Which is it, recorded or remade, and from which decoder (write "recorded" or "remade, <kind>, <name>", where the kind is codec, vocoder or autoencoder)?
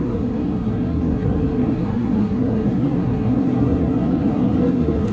remade, codec, SNAC